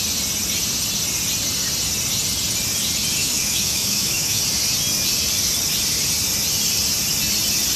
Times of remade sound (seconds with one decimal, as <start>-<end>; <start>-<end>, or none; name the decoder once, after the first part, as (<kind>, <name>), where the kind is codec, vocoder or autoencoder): 3.2-4.4 (autoencoder, DAC-VAE)